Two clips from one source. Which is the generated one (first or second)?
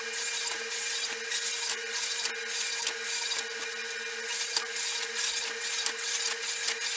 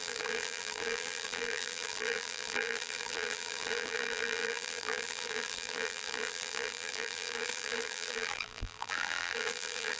second